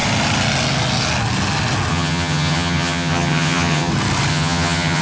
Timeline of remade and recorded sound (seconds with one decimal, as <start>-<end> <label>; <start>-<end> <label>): 0.0-1.9 recorded; 1.9-3.9 remade; 3.9-4.3 recorded; 4.3-5.0 remade